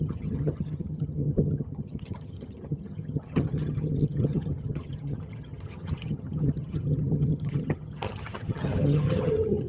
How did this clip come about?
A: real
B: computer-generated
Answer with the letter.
B